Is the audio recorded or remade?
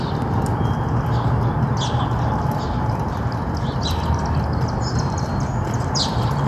recorded